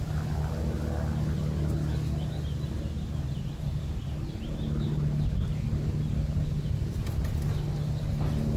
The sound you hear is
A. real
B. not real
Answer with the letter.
A